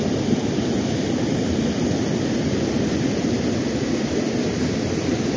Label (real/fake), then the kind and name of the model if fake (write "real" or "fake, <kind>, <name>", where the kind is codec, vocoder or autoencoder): real